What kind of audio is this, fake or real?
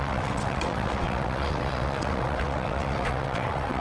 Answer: fake